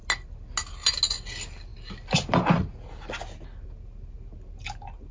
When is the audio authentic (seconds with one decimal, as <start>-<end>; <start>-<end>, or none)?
0.0-5.1